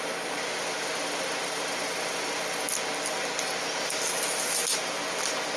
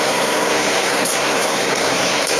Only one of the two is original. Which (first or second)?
first